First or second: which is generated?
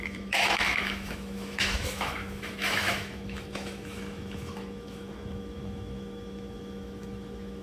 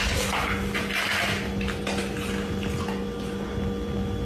first